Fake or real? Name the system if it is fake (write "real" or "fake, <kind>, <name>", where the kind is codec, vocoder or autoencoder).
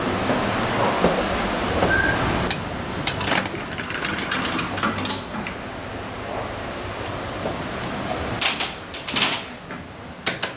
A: real